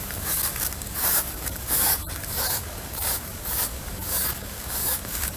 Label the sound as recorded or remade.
remade